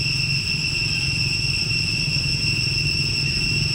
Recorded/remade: recorded